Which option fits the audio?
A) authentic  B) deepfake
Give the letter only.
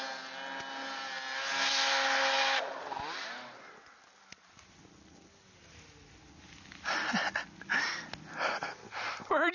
A